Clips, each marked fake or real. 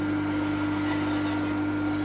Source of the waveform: real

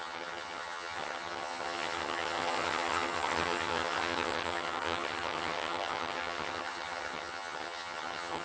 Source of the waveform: fake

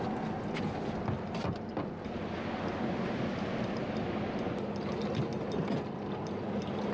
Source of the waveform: real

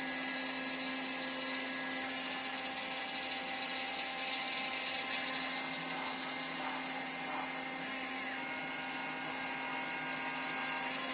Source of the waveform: real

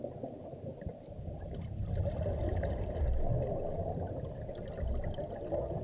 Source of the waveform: real